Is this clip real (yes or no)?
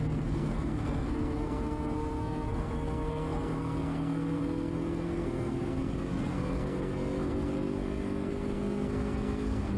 no